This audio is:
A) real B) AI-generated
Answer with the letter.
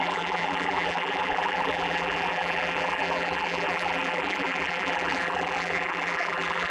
B